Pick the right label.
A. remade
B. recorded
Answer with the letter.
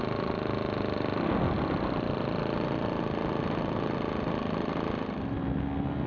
B